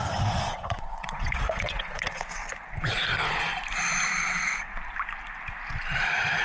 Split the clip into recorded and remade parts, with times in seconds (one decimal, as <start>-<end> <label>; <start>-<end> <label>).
0.0-0.5 recorded; 0.5-2.4 remade; 2.4-4.3 recorded; 4.3-4.7 remade; 4.7-6.4 recorded